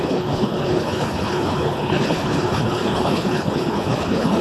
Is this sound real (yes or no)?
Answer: no